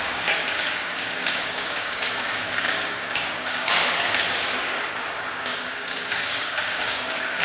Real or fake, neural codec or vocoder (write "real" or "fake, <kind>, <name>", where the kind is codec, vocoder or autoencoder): fake, codec, DAC